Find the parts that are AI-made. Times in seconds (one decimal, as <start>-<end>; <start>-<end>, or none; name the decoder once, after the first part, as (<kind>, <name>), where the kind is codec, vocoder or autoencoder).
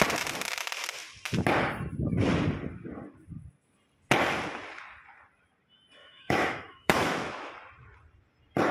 6.0-7.5 (autoencoder, DAC-VAE)